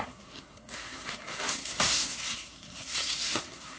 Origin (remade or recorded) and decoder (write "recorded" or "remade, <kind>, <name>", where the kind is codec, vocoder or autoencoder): remade, codec, SNAC